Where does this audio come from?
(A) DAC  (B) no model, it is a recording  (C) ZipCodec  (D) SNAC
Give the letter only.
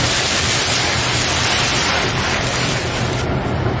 B